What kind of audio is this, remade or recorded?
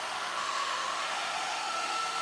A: remade